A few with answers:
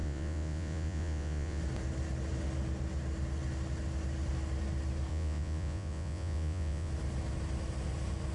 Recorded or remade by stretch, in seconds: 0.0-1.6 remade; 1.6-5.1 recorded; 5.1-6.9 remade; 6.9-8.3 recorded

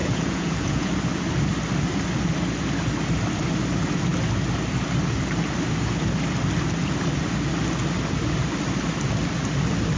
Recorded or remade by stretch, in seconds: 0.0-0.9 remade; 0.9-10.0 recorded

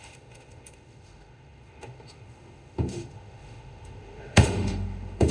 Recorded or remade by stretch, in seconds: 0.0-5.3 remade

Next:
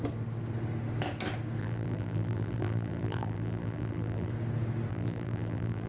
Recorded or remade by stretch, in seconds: 0.0-1.6 recorded; 1.6-4.3 remade; 4.3-4.9 recorded; 4.9-5.9 remade

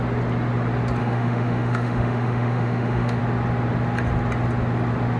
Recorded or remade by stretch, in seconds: 0.0-1.0 recorded; 1.0-3.2 remade; 3.2-5.2 recorded

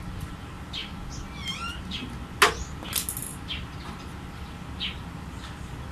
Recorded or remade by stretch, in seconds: 0.0-5.9 recorded

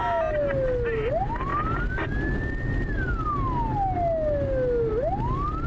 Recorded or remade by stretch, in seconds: 0.0-5.7 recorded